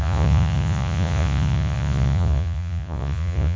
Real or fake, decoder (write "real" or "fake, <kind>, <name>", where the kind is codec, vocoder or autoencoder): fake, vocoder, Vocos